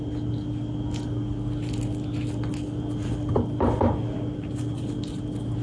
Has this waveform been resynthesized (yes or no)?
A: no